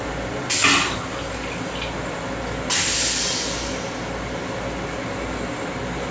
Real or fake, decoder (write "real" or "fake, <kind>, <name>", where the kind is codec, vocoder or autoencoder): real